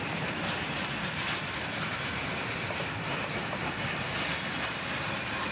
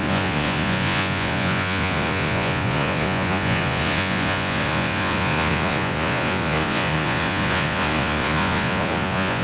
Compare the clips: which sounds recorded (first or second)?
first